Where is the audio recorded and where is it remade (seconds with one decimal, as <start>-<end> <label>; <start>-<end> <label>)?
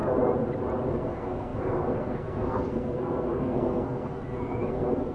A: 0.0-0.9 recorded; 0.9-5.1 remade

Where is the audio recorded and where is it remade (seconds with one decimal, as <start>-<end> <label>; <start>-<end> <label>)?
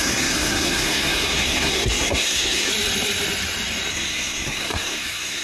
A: 0.0-2.7 remade; 2.7-3.9 recorded; 3.9-5.4 remade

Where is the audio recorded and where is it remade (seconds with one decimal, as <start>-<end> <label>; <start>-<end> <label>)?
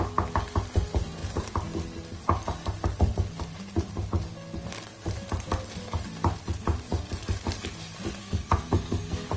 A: 0.0-8.2 recorded; 8.2-9.4 remade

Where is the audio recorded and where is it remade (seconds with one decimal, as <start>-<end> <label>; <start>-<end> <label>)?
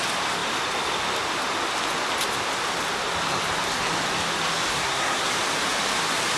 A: 0.0-4.7 recorded; 4.7-5.3 remade; 5.3-6.4 recorded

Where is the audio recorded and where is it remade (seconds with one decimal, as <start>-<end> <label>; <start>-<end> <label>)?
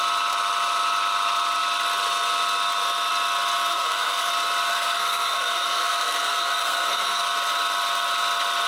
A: 0.0-3.7 recorded; 3.7-4.3 remade; 4.3-4.7 recorded; 4.7-7.2 remade; 7.2-8.7 recorded